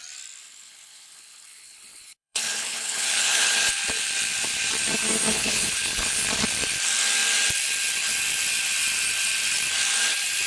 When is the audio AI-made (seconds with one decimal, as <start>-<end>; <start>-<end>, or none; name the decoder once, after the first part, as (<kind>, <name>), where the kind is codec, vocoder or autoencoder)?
0.4-3.7 (codec, HILCodec); 5.3-6.2